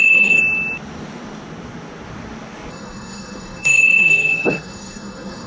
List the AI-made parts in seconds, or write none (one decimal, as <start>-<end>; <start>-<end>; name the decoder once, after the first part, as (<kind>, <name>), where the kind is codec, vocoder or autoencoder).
0.0-0.4 (codec, SNAC); 2.7-5.5

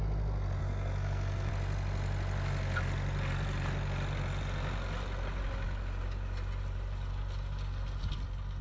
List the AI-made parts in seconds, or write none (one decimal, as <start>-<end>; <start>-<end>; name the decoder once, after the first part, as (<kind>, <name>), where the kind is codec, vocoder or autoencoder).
0.6-1.5 (codec, SNAC)

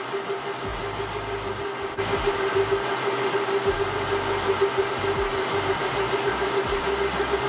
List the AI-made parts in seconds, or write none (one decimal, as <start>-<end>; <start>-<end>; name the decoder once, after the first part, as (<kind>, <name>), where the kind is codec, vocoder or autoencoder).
none

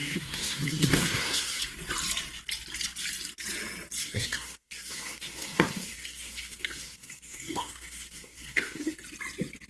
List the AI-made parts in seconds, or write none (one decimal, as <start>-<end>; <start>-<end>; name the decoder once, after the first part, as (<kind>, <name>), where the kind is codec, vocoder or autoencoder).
0.0-1.6 (codec, SNAC); 4.0-9.0